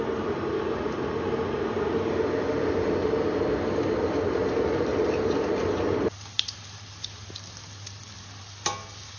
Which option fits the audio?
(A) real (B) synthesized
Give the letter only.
A